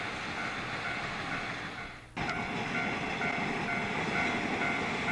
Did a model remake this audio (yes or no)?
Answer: no